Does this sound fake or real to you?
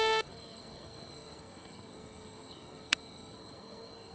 fake